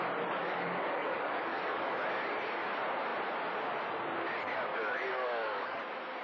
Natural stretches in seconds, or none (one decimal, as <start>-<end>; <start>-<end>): 0.0-0.4; 1.9-4.7; 5.8-6.2